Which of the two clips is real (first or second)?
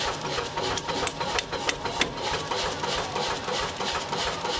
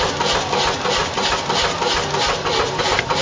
second